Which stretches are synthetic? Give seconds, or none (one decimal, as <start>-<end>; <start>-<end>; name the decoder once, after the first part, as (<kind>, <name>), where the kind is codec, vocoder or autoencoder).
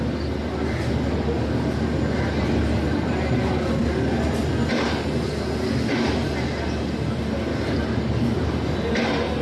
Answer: none